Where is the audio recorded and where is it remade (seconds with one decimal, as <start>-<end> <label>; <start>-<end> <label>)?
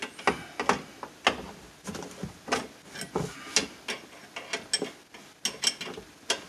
0.0-6.5 recorded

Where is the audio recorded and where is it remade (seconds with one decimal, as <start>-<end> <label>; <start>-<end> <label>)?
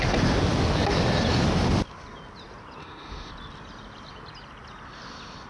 0.0-2.8 recorded; 2.8-3.3 remade; 3.3-5.5 recorded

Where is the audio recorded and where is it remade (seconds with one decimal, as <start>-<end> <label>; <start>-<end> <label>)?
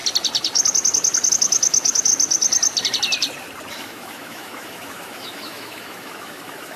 0.0-1.3 recorded; 1.3-2.1 remade; 2.1-3.7 recorded; 3.7-6.8 remade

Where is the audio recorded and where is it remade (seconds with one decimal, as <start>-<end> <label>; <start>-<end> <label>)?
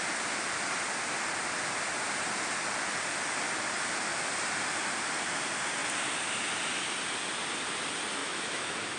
0.0-8.2 recorded; 8.2-9.0 remade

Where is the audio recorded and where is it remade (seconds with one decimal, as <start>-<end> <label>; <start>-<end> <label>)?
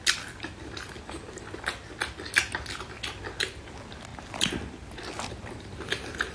0.0-6.3 recorded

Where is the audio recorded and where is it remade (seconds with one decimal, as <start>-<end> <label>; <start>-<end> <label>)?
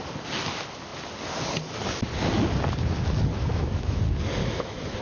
0.0-3.4 recorded; 3.4-4.0 remade; 4.0-4.4 recorded; 4.4-5.0 remade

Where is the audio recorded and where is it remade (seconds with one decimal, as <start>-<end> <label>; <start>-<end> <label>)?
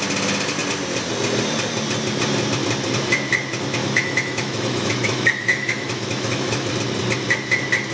0.0-3.8 recorded; 3.8-6.7 remade; 6.7-7.9 recorded